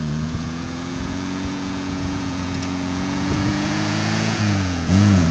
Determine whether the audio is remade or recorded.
remade